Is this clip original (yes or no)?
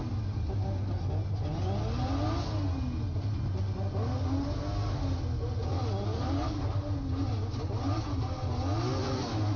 yes